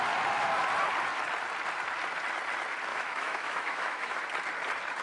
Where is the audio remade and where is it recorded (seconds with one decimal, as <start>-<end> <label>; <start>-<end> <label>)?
0.0-2.9 recorded; 2.9-4.2 remade; 4.2-5.0 recorded